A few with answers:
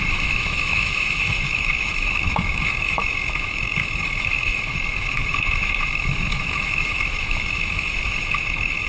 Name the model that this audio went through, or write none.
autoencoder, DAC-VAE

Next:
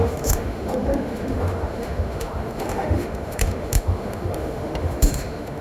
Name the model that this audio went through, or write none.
autoencoder, DAC-VAE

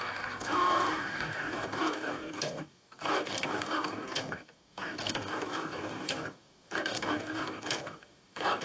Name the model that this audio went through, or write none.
codec, DAC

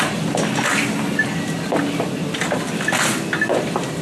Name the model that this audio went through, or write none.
none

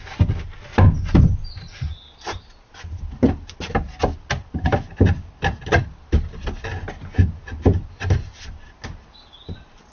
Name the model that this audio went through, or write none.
none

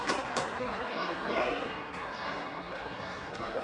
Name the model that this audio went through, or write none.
codec, SNAC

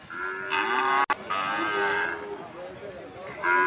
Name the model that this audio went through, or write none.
none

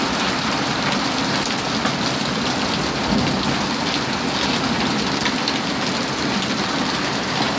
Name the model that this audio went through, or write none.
none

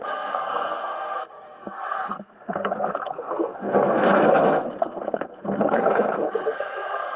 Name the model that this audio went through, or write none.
codec, SNAC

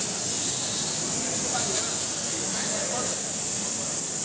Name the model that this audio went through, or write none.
none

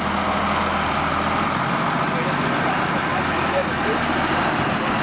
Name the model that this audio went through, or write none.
none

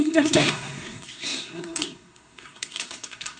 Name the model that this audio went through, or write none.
codec, SNAC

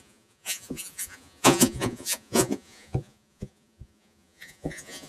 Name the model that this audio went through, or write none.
vocoder, Vocos